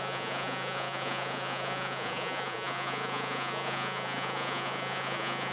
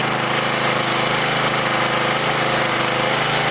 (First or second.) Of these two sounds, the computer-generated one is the first